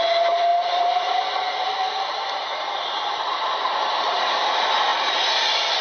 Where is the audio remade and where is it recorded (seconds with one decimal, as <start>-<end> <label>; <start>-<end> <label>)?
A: 0.0-0.5 recorded; 0.5-4.0 remade; 4.0-5.8 recorded